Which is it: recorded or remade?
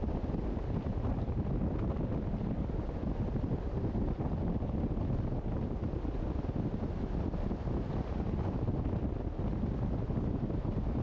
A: recorded